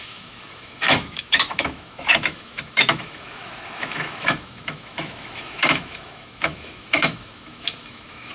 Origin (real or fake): fake